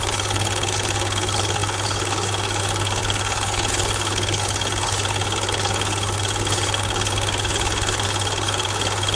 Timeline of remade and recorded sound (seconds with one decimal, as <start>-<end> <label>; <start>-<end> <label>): 0.0-9.2 remade